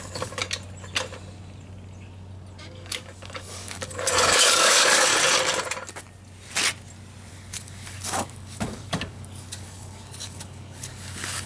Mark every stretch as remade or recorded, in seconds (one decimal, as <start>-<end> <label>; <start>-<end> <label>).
0.0-0.4 remade; 0.4-2.6 recorded; 2.6-5.1 remade; 5.1-7.3 recorded; 7.3-11.5 remade

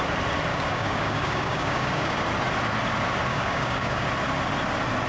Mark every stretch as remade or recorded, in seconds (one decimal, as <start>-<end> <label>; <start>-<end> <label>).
0.0-0.5 recorded; 0.5-2.2 remade; 2.2-3.3 recorded; 3.3-4.1 remade; 4.1-5.1 recorded

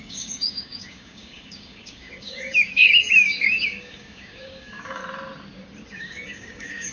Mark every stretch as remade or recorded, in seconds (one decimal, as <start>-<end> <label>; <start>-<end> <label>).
0.0-5.0 remade; 5.0-5.9 recorded; 5.9-6.9 remade

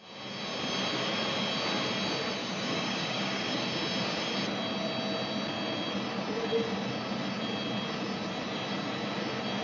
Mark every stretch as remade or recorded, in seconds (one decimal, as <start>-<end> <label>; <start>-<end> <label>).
0.0-2.4 recorded; 2.4-3.6 remade; 3.6-9.6 recorded

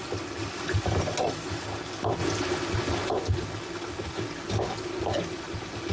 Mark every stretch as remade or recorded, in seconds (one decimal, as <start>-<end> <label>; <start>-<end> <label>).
0.0-5.9 recorded

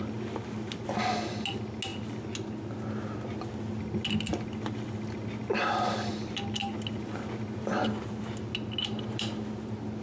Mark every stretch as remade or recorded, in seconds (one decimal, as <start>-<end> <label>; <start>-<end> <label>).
0.0-10.0 recorded

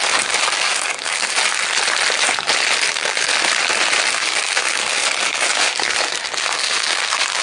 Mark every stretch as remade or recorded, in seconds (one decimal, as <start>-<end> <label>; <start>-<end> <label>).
0.0-1.4 remade; 1.4-2.9 recorded; 2.9-3.3 remade; 3.3-4.1 recorded; 4.1-7.4 remade

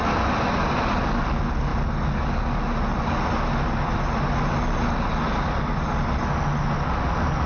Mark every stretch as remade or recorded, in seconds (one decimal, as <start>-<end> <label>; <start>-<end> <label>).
0.0-7.5 recorded